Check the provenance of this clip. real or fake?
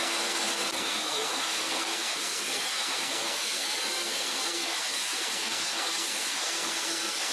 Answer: fake